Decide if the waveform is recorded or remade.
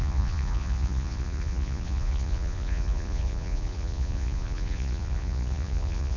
remade